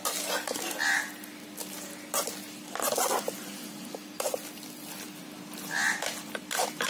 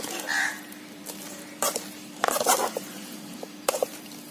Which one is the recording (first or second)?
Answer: first